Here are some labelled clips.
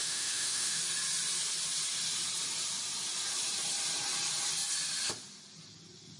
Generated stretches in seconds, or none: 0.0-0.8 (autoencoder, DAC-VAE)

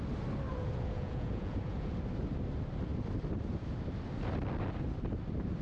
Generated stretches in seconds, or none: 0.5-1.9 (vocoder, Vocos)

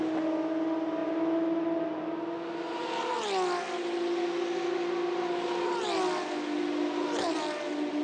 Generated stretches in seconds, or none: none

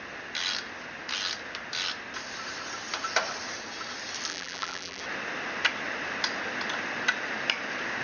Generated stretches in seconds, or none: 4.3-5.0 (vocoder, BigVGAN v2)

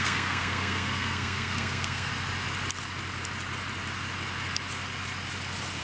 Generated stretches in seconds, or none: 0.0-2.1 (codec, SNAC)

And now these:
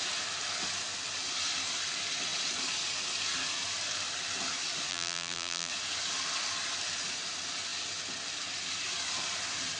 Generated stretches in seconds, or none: 4.9-5.7 (vocoder, BigVGAN v2)

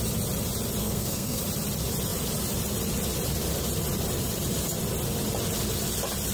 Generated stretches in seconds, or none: 0.8-1.4 (codec, SNAC)

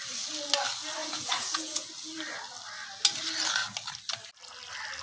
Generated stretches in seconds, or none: 1.0-1.9 (vocoder, Vocos)